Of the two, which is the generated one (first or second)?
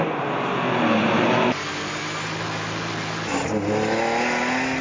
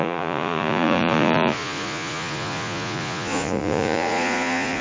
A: second